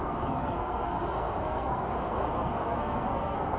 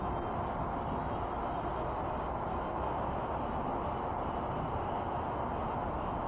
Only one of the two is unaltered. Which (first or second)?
second